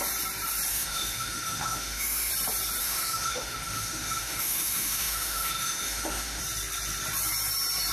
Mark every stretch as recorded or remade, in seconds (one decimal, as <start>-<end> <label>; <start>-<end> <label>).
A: 0.0-0.7 recorded; 0.7-2.3 remade; 2.3-2.8 recorded; 2.8-6.4 remade; 6.4-7.9 recorded